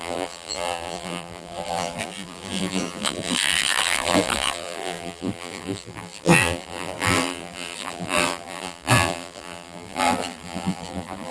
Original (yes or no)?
no